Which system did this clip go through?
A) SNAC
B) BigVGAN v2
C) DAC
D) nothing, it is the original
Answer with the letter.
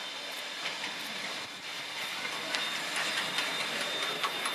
D